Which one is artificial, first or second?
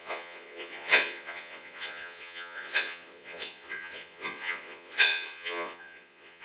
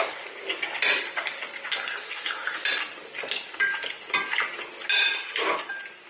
first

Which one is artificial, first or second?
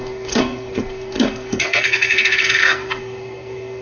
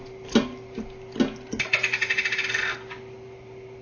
first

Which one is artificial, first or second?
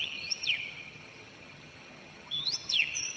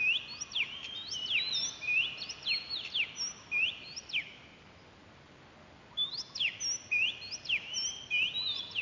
first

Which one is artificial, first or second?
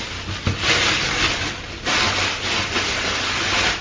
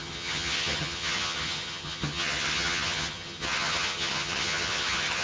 second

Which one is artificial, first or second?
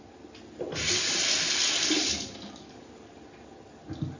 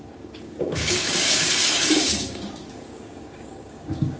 second